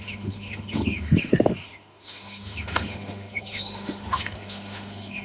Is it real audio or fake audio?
fake